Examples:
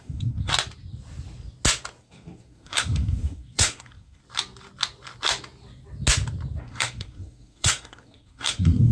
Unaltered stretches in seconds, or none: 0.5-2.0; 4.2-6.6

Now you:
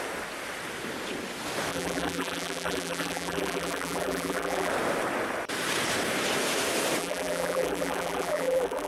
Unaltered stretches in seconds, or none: 0.0-1.7; 4.7-7.0